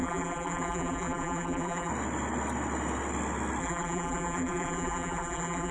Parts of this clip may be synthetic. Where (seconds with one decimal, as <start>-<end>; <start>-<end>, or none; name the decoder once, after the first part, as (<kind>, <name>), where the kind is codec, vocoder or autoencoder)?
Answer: 0.0-1.9 (vocoder, BigVGAN v2); 3.6-5.7